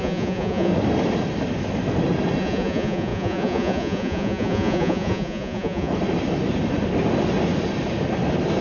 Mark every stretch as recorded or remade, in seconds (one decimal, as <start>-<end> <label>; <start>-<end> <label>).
0.0-0.7 remade; 0.7-2.4 recorded; 2.4-5.9 remade; 5.9-8.6 recorded